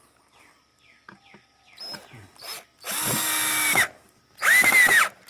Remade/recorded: recorded